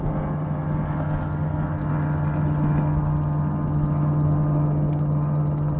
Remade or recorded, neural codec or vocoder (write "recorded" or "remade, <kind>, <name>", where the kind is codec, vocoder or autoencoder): recorded